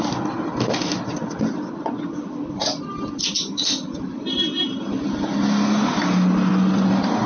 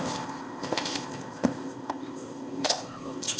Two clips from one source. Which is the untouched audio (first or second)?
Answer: first